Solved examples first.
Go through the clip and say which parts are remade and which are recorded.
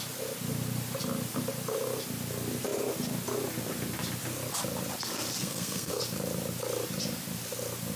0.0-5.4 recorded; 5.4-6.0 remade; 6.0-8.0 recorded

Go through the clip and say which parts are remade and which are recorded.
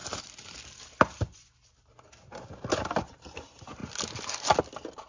0.0-5.1 recorded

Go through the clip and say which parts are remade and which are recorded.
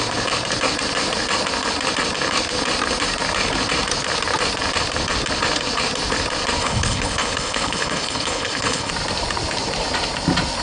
0.0-6.6 recorded; 6.6-8.9 remade; 8.9-10.6 recorded